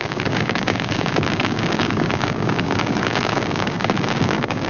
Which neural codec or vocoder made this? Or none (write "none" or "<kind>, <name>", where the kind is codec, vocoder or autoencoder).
codec, DAC